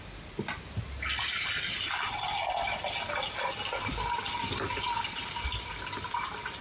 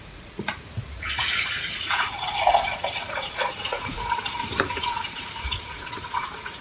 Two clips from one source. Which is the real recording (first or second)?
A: first